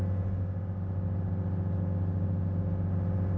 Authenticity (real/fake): real